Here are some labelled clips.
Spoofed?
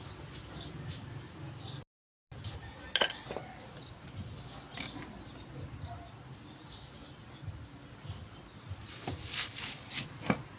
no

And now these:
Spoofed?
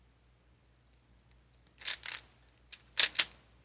no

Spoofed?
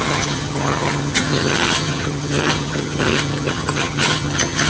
yes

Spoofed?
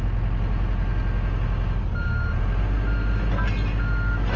no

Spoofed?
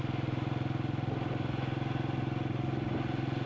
no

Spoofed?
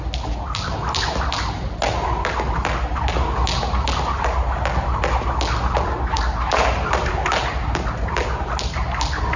no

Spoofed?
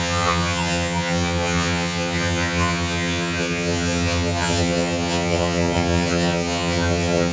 yes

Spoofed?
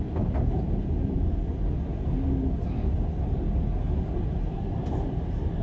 no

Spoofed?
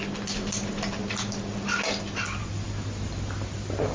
no